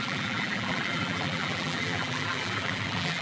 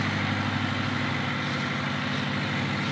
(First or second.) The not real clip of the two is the first